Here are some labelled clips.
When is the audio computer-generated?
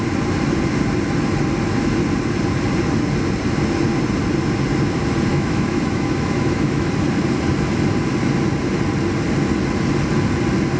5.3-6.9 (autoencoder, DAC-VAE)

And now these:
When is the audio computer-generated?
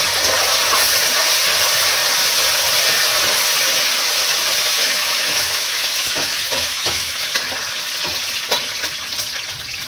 4.8-7.3 (autoencoder, DAC-VAE)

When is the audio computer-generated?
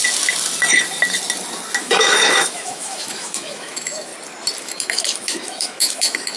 1.8-4.1 (autoencoder, DAC-VAE); 4.6-6.4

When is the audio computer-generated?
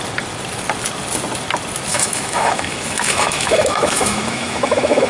1.9-5.1 (autoencoder, DAC-VAE)